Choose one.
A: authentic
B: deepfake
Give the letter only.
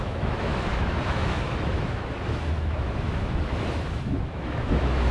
B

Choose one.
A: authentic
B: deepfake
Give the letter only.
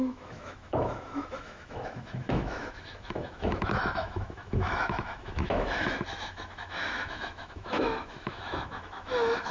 B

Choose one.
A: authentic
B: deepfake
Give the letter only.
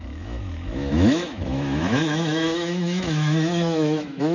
B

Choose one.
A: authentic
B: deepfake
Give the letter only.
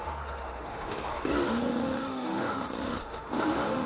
B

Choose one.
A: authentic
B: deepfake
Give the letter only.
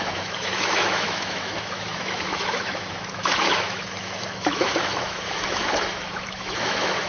B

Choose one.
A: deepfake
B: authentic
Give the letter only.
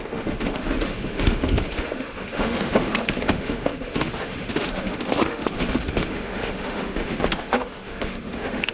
A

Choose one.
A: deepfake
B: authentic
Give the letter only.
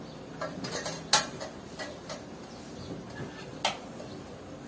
B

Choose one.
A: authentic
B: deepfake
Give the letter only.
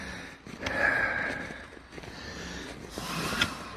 A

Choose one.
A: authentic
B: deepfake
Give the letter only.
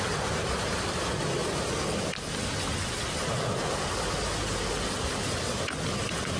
A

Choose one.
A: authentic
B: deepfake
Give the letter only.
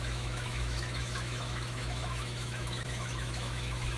B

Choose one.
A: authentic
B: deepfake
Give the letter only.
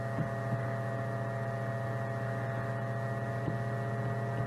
A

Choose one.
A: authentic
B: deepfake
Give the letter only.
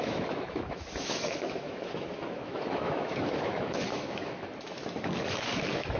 B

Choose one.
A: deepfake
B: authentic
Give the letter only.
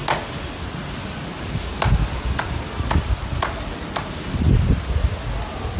B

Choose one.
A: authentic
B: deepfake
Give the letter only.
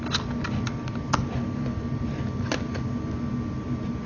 A